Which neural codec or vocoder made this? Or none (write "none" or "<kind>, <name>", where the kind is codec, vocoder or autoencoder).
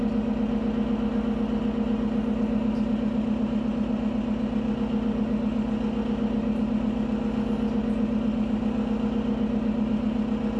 none